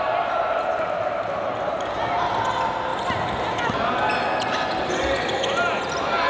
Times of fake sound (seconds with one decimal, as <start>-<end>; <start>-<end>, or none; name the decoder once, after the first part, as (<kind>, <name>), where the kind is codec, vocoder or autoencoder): none